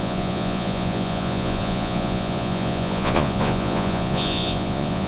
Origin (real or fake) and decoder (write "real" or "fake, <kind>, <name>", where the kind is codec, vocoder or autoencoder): fake, vocoder, Vocos